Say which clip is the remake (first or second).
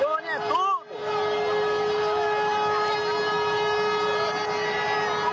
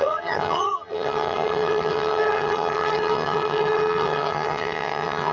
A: second